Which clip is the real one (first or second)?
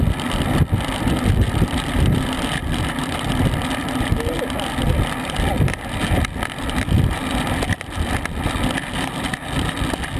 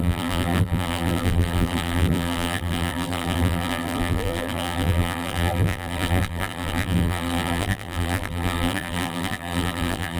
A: first